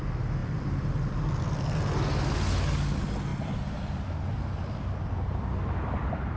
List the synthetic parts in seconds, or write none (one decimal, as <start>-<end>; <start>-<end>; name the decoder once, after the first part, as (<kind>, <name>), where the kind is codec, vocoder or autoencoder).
0.4-1.4 (vocoder, BigVGAN v2); 3.3-4.8